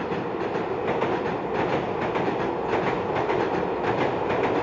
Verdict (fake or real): real